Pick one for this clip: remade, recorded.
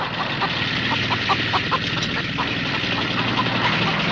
recorded